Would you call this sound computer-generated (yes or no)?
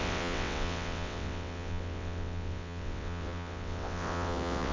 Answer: yes